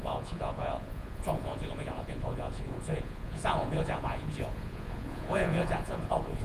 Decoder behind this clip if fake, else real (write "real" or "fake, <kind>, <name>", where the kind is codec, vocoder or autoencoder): fake, vocoder, Vocos